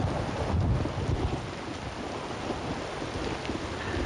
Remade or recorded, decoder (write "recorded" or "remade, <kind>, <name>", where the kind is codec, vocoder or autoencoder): recorded